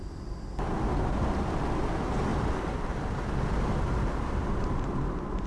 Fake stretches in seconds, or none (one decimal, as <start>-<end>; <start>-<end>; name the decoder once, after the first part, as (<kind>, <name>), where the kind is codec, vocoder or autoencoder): none